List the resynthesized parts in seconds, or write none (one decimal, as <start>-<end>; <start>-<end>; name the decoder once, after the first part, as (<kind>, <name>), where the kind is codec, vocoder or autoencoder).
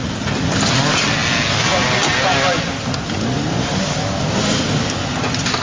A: none